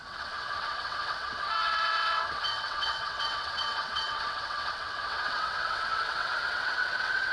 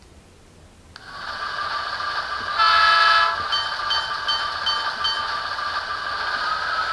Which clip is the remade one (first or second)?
first